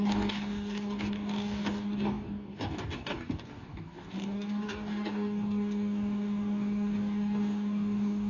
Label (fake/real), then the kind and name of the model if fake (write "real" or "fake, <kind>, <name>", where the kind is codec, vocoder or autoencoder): fake, codec, DAC